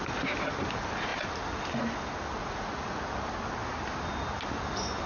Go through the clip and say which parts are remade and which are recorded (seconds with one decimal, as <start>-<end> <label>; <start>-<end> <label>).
0.0-2.4 recorded; 2.4-3.0 remade; 3.0-5.1 recorded